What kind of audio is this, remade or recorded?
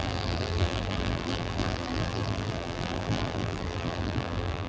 remade